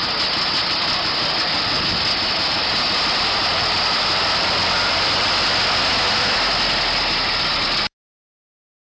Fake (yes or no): no